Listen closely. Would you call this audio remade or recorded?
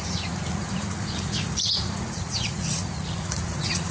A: remade